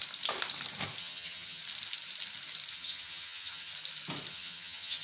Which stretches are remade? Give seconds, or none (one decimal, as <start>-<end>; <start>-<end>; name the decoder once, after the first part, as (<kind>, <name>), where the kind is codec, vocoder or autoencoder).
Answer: 1.0-1.6 (vocoder, HiFi-GAN); 2.7-3.7; 4.3-5.0